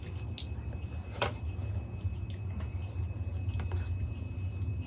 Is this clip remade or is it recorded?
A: recorded